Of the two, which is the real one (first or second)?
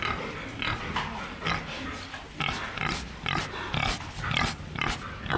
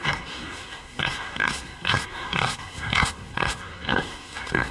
first